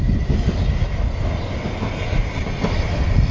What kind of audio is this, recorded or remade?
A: recorded